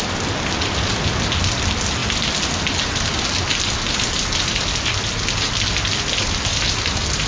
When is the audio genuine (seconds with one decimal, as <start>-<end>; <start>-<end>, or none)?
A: 0.0-7.3